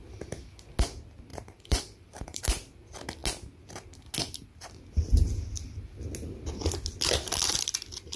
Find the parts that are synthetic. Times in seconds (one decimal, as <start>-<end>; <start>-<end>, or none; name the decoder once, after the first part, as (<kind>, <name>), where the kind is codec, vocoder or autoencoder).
1.3-2.4 (vocoder, BigVGAN v2)